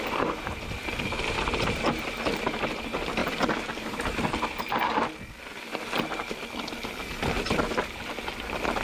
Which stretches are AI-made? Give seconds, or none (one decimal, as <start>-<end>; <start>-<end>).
3.2-4.8